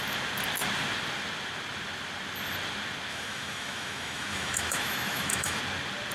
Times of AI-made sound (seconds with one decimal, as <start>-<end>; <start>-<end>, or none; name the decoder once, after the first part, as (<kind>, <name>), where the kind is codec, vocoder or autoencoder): 3.1-5.6 (autoencoder, DAC-VAE)